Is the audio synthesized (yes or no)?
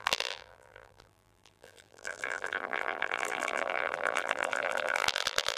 yes